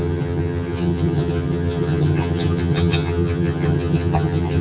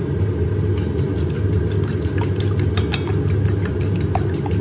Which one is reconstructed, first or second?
first